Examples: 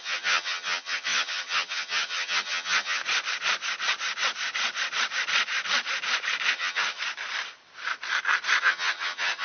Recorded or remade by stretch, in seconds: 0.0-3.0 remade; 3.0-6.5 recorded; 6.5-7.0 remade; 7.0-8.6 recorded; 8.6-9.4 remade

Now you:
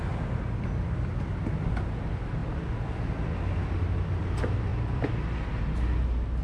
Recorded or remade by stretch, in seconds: 0.0-4.7 recorded; 4.7-5.6 remade; 5.6-6.4 recorded

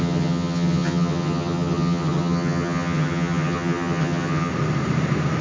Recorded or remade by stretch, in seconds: 0.0-4.5 remade; 4.5-5.4 recorded

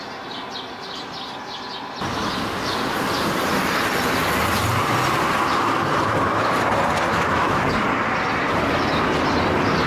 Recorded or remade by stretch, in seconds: 0.0-7.1 recorded; 7.1-7.6 remade; 7.6-9.9 recorded